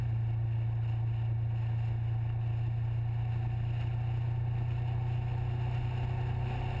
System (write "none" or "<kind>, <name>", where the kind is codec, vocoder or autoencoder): none